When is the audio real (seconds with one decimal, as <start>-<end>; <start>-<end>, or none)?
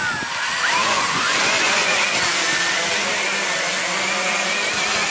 0.0-0.8; 2.0-5.1